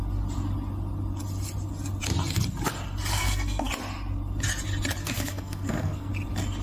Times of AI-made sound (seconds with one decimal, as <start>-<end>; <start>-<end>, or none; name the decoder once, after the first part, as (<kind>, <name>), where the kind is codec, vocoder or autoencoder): 3.1-3.7 (codec, SNAC); 5.0-6.1